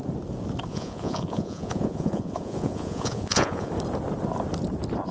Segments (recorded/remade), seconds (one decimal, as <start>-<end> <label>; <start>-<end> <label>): 0.0-0.7 recorded; 0.7-3.7 remade; 3.7-5.1 recorded